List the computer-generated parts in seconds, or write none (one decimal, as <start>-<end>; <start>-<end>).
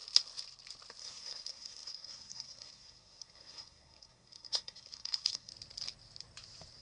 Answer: 1.0-5.5